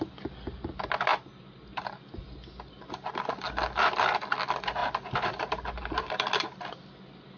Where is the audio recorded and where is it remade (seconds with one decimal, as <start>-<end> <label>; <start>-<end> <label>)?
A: 0.0-7.4 recorded